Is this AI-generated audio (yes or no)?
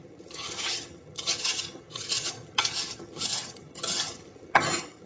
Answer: yes